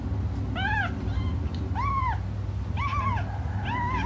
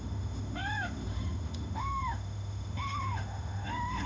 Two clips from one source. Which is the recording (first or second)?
first